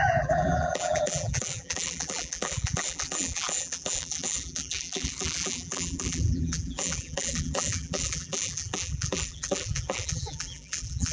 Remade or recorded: remade